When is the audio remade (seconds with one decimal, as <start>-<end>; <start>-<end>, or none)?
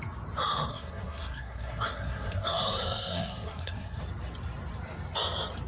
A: 0.7-4.0